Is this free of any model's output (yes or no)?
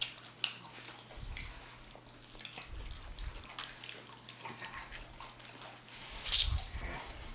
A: yes